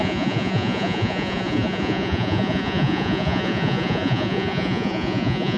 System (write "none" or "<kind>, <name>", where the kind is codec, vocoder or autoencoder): vocoder, Vocos